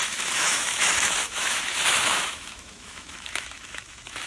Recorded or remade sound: remade